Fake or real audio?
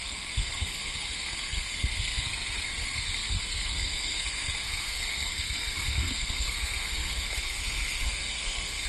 fake